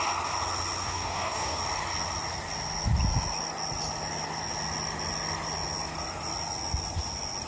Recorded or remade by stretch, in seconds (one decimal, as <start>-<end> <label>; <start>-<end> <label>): 0.0-0.8 recorded; 0.8-1.6 remade; 1.6-7.5 recorded